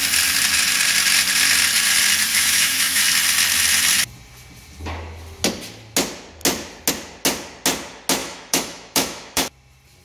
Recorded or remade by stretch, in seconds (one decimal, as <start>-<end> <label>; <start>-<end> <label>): 0.0-2.3 recorded; 2.3-3.0 remade; 3.0-8.2 recorded; 8.2-9.5 remade; 9.5-10.0 recorded